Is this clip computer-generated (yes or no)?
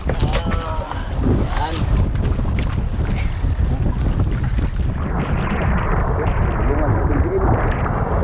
no